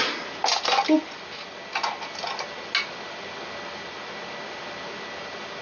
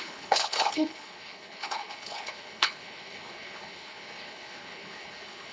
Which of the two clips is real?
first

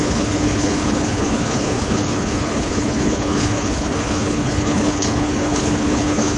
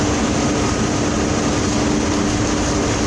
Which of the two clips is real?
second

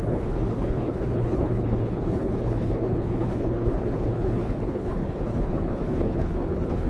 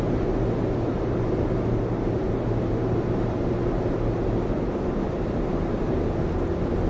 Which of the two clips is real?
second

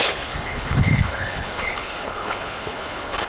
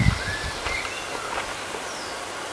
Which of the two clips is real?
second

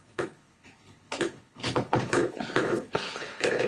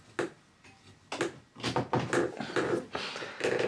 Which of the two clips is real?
second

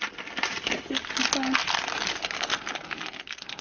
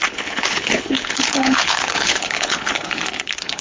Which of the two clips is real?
first